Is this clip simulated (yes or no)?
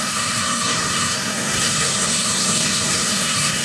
yes